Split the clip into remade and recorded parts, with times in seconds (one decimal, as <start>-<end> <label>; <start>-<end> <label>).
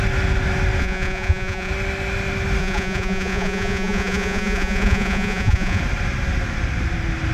0.0-0.8 recorded; 0.8-1.7 remade; 1.7-2.6 recorded; 2.6-5.8 remade; 5.8-7.3 recorded